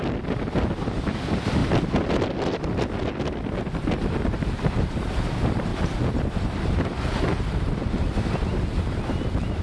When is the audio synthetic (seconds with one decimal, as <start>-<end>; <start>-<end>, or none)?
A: 5.7-6.3